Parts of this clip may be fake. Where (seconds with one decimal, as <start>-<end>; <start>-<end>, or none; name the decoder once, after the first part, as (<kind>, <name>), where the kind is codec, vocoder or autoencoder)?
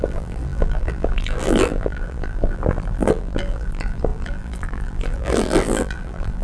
0.0-6.4 (vocoder, BigVGAN v2)